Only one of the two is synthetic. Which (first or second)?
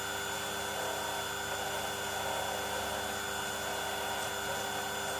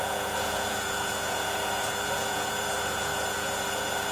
second